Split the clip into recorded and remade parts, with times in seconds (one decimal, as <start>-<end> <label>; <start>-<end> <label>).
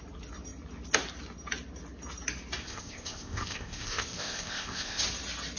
0.0-2.6 recorded; 2.6-5.0 remade; 5.0-5.6 recorded